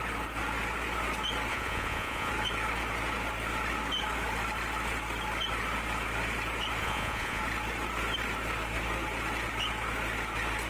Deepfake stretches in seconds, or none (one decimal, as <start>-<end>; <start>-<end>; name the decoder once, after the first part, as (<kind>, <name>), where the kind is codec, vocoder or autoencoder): 1.5-2.3 (vocoder, Vocos); 6.8-7.4